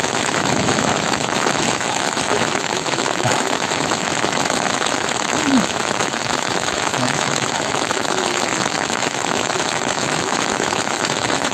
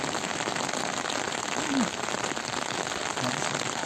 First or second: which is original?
second